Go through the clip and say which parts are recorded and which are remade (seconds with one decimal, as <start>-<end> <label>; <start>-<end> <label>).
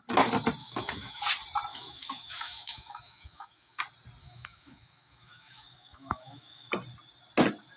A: 0.0-0.6 recorded; 0.6-1.2 remade; 1.2-1.7 recorded; 1.7-3.8 remade; 3.8-4.2 recorded; 4.2-6.7 remade; 6.7-7.8 recorded